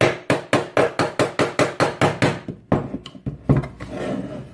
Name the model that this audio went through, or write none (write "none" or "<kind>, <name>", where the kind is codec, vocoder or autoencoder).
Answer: none